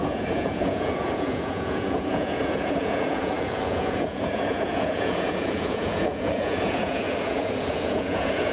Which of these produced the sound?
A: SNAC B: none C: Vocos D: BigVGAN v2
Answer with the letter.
C